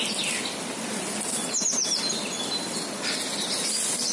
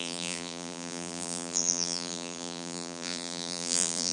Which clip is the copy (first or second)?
second